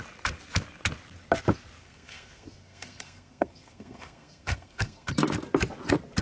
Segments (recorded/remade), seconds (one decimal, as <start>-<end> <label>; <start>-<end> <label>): 0.0-1.8 recorded; 1.8-5.1 remade; 5.1-6.2 recorded